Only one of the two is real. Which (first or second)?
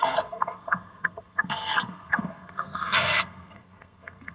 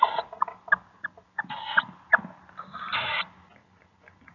second